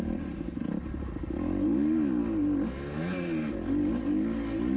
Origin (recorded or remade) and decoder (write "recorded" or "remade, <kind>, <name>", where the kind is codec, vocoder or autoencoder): recorded